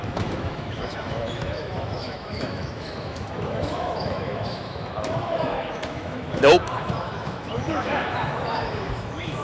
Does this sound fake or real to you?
fake